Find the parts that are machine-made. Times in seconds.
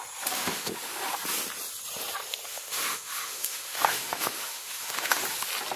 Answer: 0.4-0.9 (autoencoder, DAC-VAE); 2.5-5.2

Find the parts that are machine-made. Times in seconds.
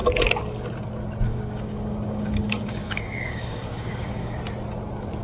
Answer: 1.3-4.4 (codec, DAC)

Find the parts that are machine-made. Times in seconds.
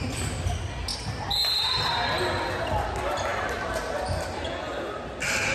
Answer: none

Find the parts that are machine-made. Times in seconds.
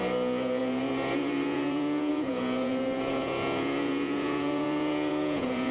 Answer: 0.0-5.7 (vocoder, Vocos)